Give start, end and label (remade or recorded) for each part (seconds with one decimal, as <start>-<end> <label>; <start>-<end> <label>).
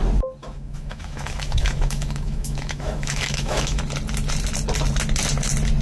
0.0-0.4 recorded; 0.4-3.8 remade; 3.8-5.8 recorded